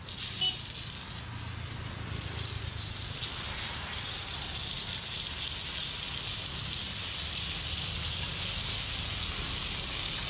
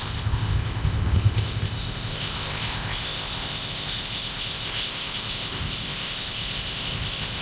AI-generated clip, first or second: second